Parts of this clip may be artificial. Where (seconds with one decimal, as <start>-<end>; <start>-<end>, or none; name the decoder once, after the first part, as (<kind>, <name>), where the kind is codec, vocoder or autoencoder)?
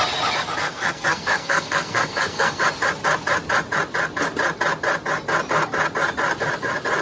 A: 0.6-2.6 (codec, SNAC)